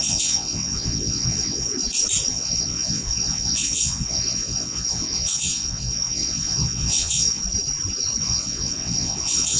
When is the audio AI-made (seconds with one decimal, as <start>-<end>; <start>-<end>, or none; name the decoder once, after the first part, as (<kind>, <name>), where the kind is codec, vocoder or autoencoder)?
0.0-1.7 (vocoder, WaveNeXt); 2.3-7.4; 8.2-9.6